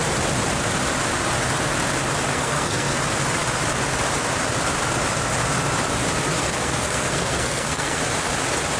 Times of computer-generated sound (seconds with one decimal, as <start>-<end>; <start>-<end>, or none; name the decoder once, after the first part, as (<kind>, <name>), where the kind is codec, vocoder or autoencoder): 2.3-3.0 (codec, SNAC); 6.4-8.0